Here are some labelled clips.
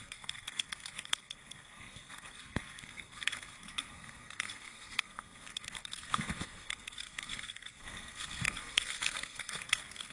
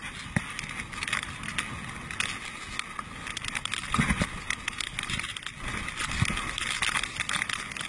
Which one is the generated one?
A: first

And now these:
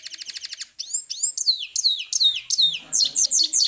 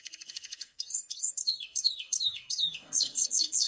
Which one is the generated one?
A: second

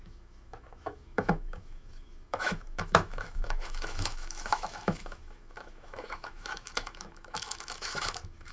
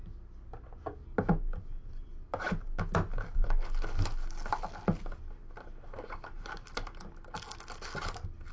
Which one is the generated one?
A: first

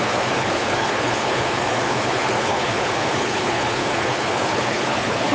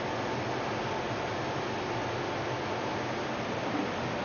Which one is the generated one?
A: first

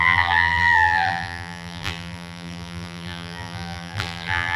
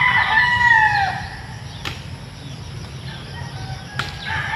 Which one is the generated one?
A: first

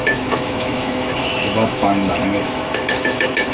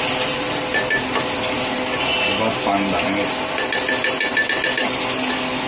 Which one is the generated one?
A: first